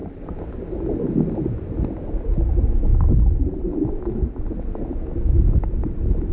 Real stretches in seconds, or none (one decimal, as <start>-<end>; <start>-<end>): 0.0-6.3